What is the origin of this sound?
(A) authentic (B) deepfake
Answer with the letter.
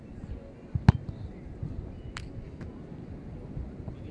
A